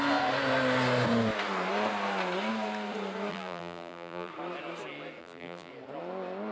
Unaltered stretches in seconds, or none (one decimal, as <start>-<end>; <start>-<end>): 0.0-3.3; 4.3-5.2; 5.7-6.5